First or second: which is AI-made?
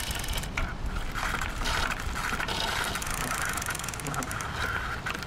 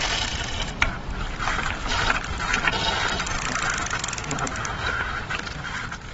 second